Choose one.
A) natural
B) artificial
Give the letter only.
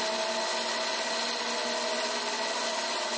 A